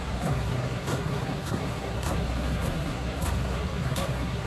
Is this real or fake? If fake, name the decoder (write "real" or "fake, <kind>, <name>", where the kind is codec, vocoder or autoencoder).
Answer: fake, codec, SNAC